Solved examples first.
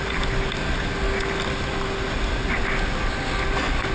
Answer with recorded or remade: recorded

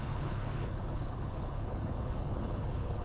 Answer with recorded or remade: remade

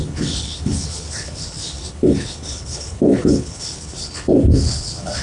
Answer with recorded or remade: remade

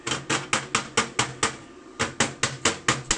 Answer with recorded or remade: recorded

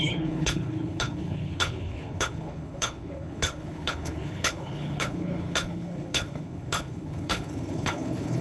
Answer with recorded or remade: remade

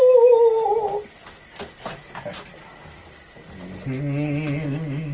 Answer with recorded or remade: recorded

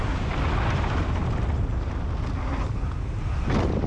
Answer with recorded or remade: recorded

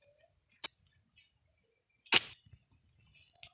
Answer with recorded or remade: recorded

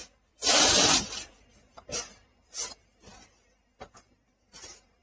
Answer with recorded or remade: recorded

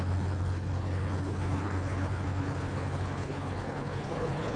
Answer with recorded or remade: remade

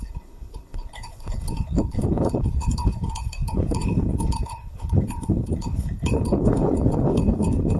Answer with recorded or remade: remade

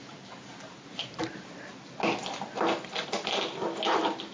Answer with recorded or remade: recorded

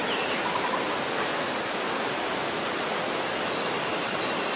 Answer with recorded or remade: recorded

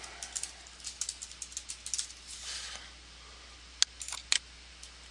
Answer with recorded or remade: recorded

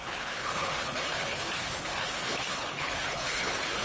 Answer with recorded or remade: remade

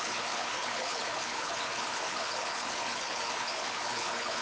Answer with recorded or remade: remade